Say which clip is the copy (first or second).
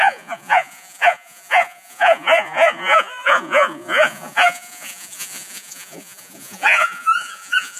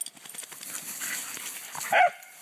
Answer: first